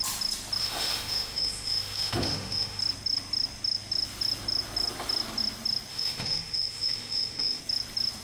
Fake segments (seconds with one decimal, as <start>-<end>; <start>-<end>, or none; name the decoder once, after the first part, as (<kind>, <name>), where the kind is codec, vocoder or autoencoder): 0.6-2.8 (autoencoder, DAC-VAE); 5.9-7.6